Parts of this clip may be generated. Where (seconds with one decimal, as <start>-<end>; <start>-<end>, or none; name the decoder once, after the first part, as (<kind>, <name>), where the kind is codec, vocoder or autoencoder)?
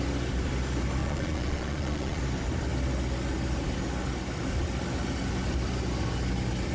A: 1.0-2.2 (vocoder, Vocos)